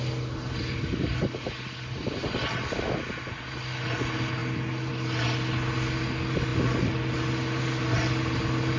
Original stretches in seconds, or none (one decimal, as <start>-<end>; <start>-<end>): 0.0-8.8